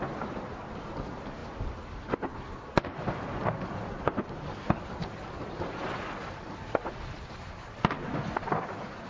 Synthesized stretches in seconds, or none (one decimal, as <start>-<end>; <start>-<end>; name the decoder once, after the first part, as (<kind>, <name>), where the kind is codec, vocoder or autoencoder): none